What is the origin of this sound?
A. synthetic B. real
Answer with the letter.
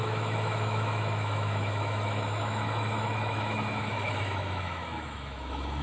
A